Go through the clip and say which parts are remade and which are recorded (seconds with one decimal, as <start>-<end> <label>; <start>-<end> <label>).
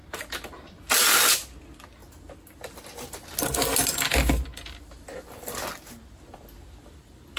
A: 0.0-7.4 recorded